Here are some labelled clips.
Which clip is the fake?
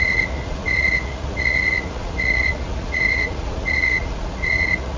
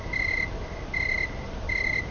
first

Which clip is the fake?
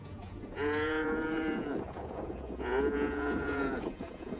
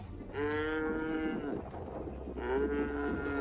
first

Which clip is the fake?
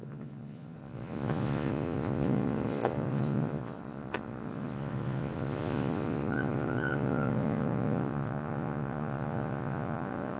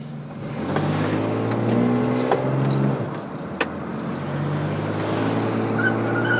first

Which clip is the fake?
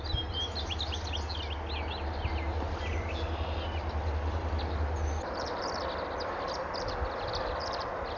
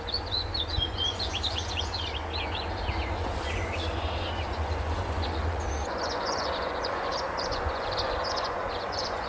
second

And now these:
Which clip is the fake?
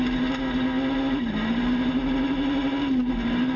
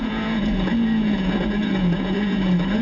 second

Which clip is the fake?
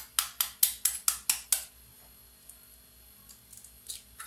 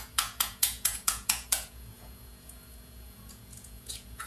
second